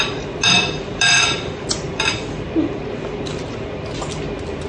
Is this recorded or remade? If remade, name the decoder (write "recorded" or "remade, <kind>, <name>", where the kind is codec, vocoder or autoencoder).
recorded